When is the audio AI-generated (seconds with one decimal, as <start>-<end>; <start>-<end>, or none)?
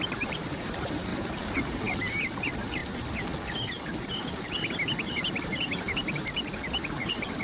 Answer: 0.0-1.1; 2.4-2.8; 6.9-7.4